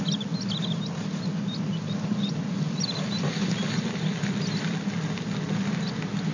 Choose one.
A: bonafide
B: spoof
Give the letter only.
A